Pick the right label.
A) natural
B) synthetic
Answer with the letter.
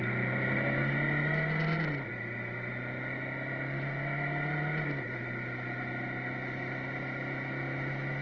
A